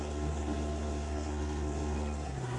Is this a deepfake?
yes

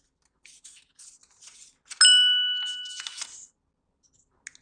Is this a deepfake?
no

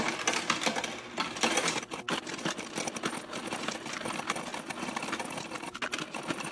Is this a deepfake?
no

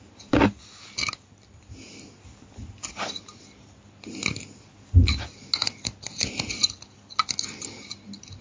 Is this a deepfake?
no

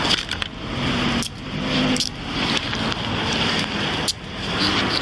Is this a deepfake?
no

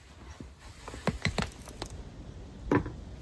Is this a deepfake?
no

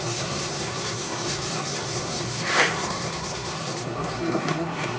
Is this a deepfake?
yes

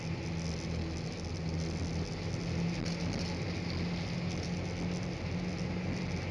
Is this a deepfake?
no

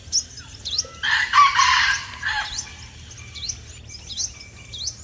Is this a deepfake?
no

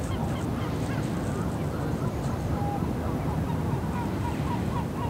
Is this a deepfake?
no